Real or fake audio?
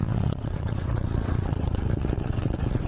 fake